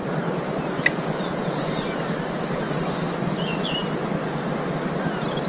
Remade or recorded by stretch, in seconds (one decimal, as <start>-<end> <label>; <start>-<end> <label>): 0.0-1.4 remade; 1.4-5.5 recorded